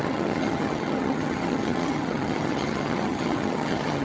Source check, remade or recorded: remade